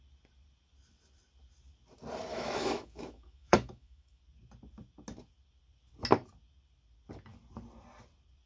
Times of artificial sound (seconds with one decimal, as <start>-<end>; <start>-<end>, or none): 2.3-4.2